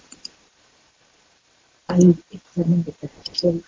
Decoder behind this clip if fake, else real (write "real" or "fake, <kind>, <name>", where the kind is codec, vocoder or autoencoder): fake, vocoder, BigVGAN v2